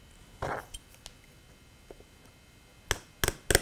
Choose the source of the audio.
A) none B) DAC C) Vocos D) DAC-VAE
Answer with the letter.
A